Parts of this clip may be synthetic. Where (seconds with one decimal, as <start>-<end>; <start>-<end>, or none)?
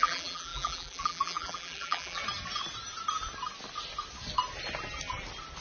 0.0-2.2